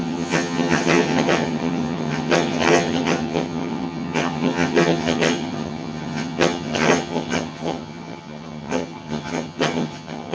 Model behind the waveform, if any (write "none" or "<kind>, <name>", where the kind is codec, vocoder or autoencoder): vocoder, HiFi-GAN